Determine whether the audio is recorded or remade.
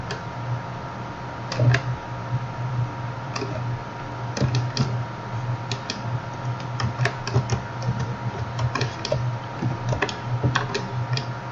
recorded